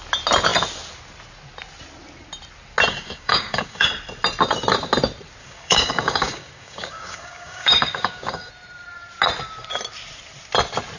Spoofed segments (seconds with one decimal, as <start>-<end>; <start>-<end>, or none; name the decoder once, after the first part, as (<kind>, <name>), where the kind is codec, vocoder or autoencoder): 2.9-3.9 (codec, DAC); 5.4-8.5